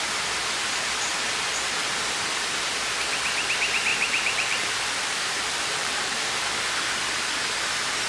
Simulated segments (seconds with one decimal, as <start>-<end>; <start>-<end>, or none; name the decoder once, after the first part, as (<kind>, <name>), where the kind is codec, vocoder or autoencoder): 3.9-6.2 (vocoder, BigVGAN v2)